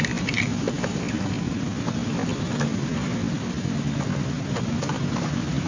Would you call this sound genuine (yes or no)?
yes